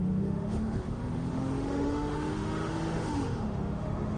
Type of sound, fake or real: fake